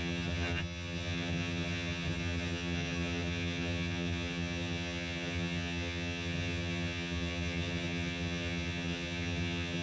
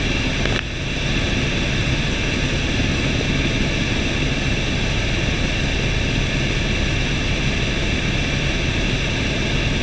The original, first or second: second